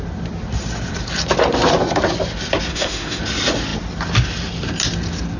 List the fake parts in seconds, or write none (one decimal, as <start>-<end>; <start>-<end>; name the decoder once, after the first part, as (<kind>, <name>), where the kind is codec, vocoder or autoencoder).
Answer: 2.7-3.2 (autoencoder, DAC-VAE)